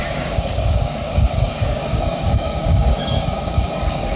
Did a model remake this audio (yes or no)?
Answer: yes